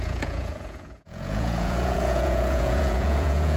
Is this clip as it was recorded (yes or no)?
no